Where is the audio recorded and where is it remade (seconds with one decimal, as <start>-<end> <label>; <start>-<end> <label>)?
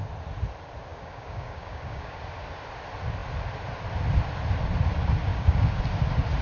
0.0-0.9 recorded; 0.9-2.2 remade; 2.2-5.3 recorded; 5.3-5.8 remade; 5.8-6.4 recorded